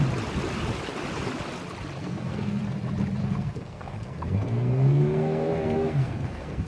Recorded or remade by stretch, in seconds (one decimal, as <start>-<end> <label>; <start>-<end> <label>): 0.0-2.0 recorded; 2.0-2.6 remade; 2.6-3.2 recorded; 3.2-6.7 remade